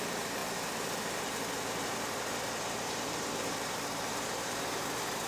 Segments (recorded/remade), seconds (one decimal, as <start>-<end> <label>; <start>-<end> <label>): 0.0-5.3 remade